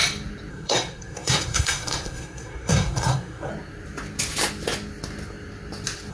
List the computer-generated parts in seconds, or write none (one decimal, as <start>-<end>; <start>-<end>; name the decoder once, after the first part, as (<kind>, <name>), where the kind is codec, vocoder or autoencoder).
0.5-3.5 (codec, SNAC)